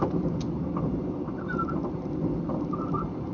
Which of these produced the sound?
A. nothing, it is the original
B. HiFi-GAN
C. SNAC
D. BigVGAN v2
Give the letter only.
A